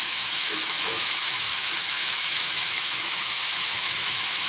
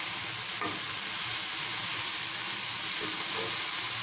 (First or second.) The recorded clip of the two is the second